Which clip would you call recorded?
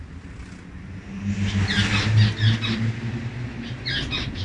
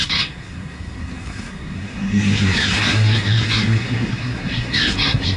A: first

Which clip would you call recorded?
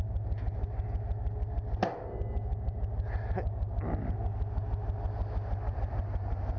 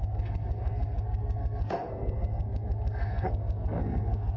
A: first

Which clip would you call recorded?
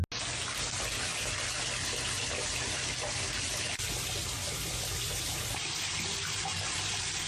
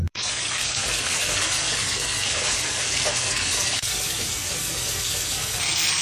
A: first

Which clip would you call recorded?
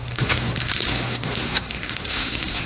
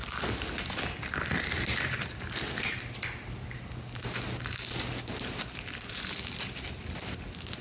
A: second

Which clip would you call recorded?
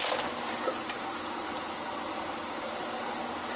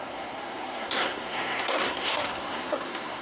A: first